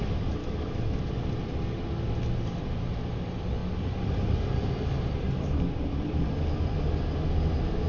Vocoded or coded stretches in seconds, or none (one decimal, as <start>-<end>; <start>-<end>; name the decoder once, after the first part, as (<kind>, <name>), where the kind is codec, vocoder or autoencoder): 0.4-1.1 (autoencoder, DAC-VAE)